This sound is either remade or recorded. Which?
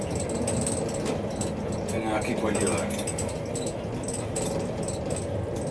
recorded